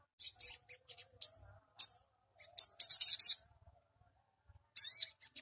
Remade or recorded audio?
recorded